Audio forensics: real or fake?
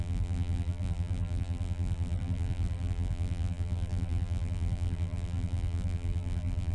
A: fake